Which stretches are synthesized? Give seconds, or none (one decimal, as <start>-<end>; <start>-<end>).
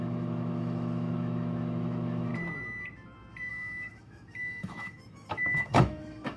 0.0-2.3; 3.5-6.4